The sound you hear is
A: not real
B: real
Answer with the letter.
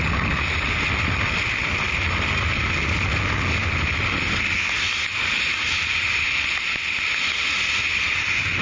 B